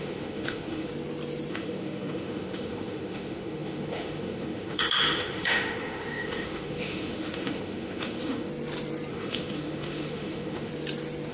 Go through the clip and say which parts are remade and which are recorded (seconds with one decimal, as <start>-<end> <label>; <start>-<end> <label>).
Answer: 0.0-0.9 remade; 0.9-1.5 recorded; 1.5-8.5 remade; 8.5-9.1 recorded; 9.1-10.7 remade; 10.7-11.3 recorded